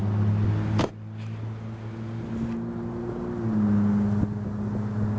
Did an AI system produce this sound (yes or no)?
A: no